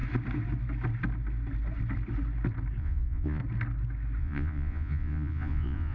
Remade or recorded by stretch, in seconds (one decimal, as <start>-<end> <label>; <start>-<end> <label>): 0.0-2.8 recorded; 2.8-3.4 remade; 3.4-4.2 recorded; 4.2-5.9 remade